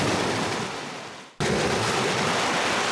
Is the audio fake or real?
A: real